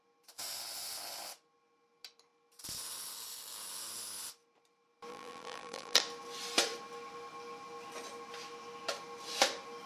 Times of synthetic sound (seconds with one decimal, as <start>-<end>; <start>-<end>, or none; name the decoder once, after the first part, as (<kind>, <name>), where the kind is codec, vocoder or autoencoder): 5.1-6.0 (vocoder, BigVGAN v2)

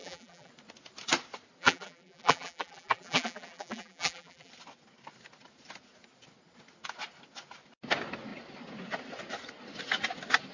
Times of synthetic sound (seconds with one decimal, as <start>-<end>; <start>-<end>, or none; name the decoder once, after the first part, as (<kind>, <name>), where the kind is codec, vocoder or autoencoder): 0.0-0.5 (vocoder, BigVGAN v2); 1.6-4.5

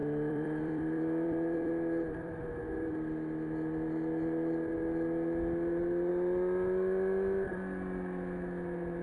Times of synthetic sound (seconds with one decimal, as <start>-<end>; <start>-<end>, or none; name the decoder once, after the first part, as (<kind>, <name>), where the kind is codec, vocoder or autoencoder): 0.0-2.6 (vocoder, BigVGAN v2)

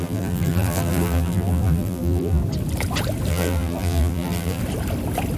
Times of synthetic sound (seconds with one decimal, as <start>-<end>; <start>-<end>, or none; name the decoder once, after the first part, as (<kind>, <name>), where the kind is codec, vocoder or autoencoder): 0.0-2.4 (vocoder, BigVGAN v2); 3.3-4.6

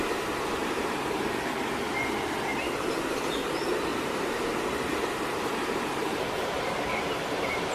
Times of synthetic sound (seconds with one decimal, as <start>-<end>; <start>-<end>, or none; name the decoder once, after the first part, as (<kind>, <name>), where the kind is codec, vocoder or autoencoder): 0.6-1.2 (vocoder, BigVGAN v2); 2.5-3.2; 3.9-7.7

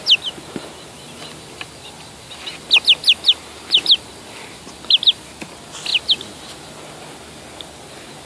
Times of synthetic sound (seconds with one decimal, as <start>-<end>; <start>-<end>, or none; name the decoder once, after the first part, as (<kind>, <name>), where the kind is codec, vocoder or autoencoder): 5.9-6.7 (vocoder, BigVGAN v2)

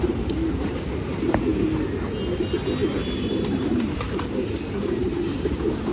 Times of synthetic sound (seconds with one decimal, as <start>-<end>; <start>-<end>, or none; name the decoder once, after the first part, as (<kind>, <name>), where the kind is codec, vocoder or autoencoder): 0.0-1.5 (vocoder, BigVGAN v2); 3.2-5.9

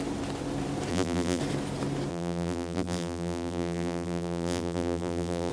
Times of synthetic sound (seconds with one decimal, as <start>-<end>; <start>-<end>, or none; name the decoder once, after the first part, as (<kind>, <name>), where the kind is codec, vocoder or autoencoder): 0.9-1.4 (vocoder, BigVGAN v2); 2.1-5.5